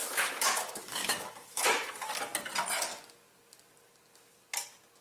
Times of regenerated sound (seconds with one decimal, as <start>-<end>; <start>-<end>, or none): 0.0-1.9